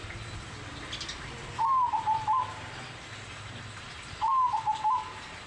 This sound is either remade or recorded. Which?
recorded